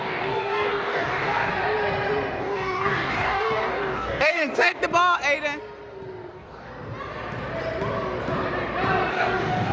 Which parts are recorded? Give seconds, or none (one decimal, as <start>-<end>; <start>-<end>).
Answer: 1.5-2.4; 4.8-6.3; 6.7-9.1